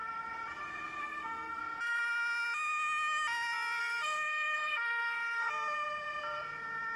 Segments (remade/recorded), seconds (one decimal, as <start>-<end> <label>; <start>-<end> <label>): 0.0-1.0 recorded; 1.0-1.6 remade; 1.6-3.8 recorded; 3.8-5.5 remade; 5.5-7.0 recorded